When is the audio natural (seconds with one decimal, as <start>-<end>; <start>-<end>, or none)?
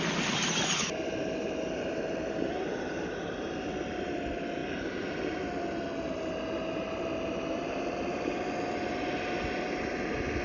0.0-10.4